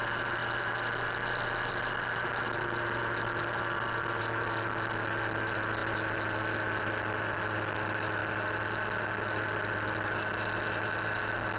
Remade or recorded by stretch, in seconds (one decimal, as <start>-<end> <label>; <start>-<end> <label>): 0.0-11.6 recorded